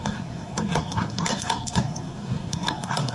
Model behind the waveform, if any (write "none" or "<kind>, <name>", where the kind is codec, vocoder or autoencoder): codec, SNAC